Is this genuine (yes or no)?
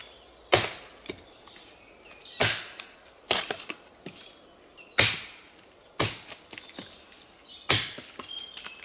yes